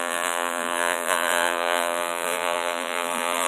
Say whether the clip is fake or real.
fake